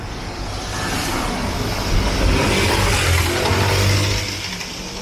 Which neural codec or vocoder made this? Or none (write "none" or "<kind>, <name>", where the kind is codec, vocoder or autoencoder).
none